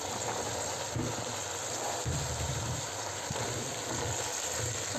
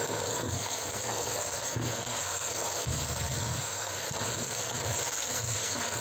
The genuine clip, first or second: first